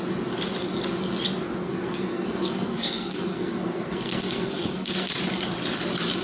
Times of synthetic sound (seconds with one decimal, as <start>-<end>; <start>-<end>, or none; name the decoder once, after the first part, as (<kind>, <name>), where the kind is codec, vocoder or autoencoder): 1.6-5.2 (codec, SNAC)